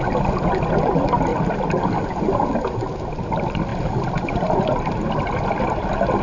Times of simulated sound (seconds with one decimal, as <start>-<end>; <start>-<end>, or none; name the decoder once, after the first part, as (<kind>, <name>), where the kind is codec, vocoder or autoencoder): none